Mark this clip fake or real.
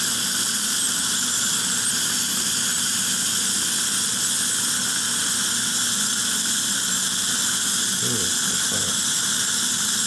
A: real